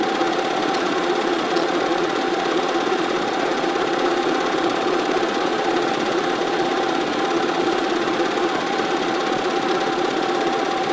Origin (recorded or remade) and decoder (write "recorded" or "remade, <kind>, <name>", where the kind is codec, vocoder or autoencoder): remade, vocoder, Vocos